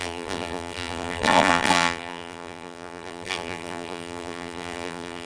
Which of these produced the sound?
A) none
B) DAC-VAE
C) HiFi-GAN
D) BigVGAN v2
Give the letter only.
D